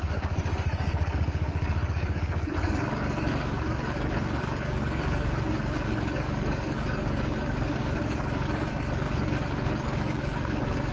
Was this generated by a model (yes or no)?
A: yes